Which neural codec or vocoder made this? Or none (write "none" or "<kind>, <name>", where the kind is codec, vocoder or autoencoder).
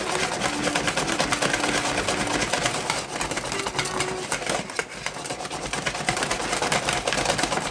none